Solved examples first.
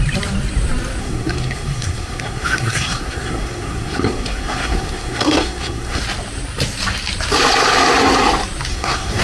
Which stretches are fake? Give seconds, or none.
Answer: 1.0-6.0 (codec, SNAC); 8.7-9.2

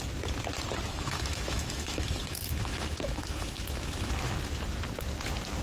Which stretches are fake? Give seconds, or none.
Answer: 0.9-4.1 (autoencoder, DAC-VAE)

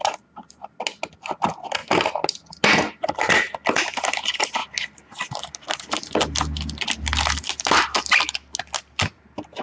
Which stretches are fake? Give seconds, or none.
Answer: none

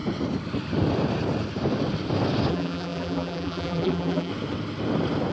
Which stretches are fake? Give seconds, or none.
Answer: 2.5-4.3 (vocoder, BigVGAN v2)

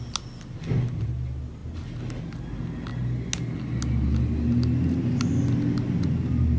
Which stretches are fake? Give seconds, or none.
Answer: none

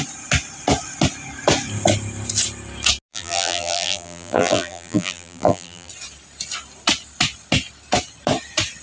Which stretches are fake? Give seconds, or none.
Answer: 3.1-5.9 (vocoder, BigVGAN v2)

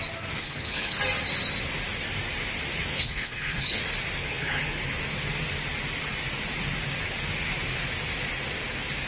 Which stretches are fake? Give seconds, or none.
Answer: 0.4-1.0 (codec, HILCodec); 2.9-3.8; 4.2-5.0

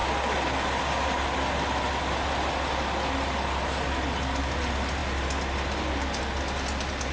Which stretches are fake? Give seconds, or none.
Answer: none